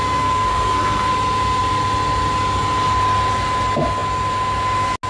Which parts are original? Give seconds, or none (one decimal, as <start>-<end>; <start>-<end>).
1.1-5.1